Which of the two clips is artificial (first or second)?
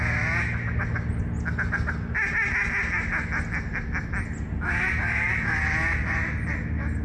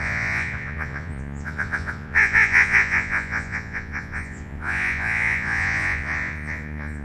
second